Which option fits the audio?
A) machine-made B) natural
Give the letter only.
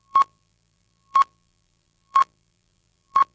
A